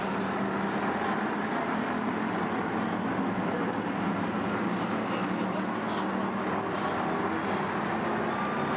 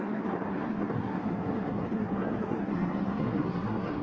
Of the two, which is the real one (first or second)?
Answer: first